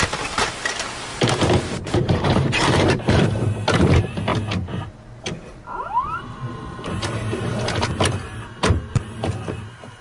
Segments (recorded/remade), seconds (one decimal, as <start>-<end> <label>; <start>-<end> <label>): 0.0-4.3 remade; 4.3-5.2 recorded; 5.2-10.0 remade